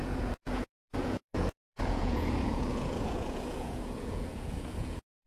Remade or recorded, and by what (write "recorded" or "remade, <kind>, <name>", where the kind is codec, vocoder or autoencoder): remade, vocoder, Vocos